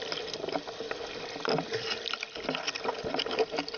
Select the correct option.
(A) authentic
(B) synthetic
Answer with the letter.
A